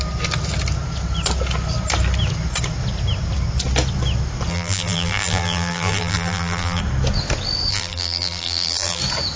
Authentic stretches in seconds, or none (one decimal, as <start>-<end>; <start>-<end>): 0.0-4.5; 6.8-7.7; 9.0-9.4